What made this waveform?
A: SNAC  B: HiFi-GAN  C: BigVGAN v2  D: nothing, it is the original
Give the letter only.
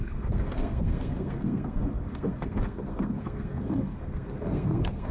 A